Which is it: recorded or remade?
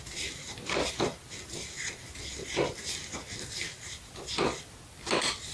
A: recorded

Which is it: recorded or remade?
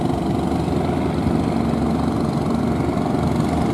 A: recorded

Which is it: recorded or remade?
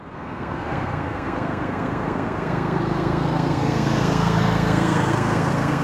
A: remade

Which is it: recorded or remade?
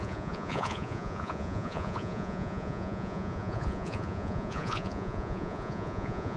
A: remade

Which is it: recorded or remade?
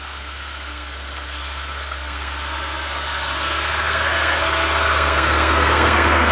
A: remade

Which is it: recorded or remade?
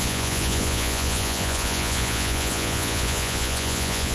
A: remade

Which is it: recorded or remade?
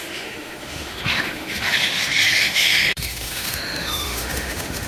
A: remade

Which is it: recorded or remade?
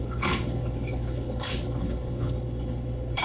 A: remade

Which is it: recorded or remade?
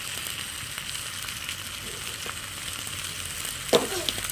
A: recorded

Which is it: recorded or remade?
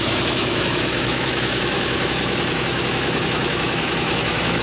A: remade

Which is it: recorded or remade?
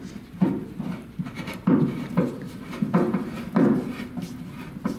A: remade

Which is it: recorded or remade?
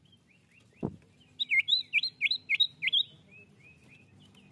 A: recorded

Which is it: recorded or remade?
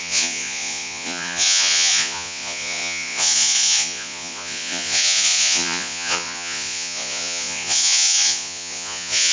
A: remade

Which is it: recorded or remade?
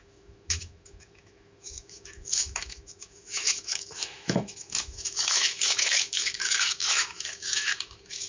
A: remade